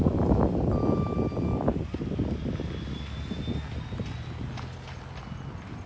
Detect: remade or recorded recorded